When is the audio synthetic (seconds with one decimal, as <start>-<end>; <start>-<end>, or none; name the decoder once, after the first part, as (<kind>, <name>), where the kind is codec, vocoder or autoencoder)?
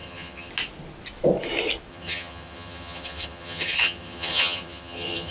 0.0-0.5 (vocoder, HiFi-GAN); 1.9-5.3